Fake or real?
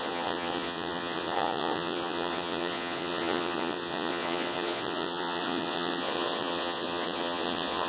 fake